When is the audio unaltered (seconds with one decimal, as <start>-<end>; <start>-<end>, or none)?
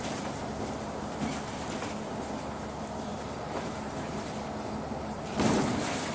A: 0.0-3.1